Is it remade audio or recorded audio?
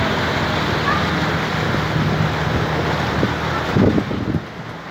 recorded